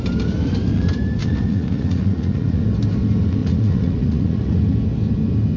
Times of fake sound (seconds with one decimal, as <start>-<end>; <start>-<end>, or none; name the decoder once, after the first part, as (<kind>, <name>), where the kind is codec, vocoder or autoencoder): 1.2-2.6 (vocoder, Vocos); 3.4-4.6